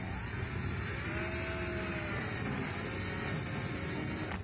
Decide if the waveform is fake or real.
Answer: real